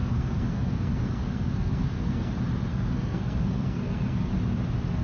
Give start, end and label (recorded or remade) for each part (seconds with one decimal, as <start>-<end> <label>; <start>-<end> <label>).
0.0-2.3 remade; 2.3-2.7 recorded; 2.7-4.3 remade; 4.3-5.0 recorded